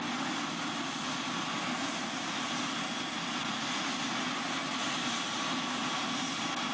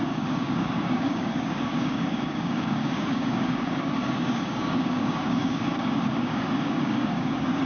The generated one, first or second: second